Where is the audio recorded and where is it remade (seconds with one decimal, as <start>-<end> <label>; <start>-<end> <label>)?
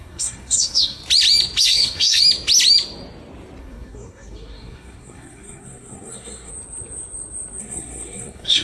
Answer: 0.0-1.0 remade; 1.0-1.6 recorded; 1.6-2.2 remade; 2.2-3.6 recorded; 3.6-6.5 remade; 6.5-7.6 recorded; 7.6-8.6 remade